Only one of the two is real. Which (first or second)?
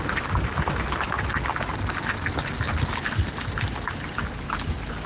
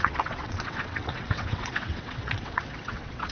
first